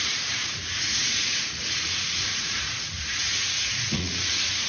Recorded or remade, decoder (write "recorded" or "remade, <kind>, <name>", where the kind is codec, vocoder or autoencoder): remade, vocoder, Vocos